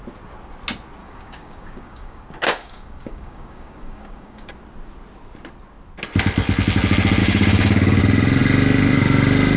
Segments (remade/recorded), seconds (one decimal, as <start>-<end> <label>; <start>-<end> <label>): 0.0-1.0 recorded; 1.0-4.5 remade; 4.5-7.2 recorded; 7.2-8.0 remade; 8.0-9.6 recorded